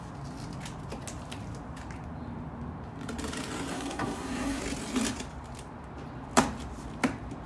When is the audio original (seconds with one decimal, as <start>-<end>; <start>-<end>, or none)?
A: 0.0-3.7; 4.6-7.5